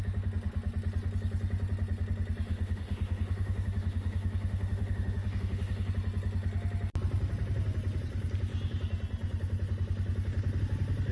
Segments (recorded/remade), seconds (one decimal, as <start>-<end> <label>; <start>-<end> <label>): 0.0-2.5 recorded; 2.5-5.9 remade; 5.9-11.1 recorded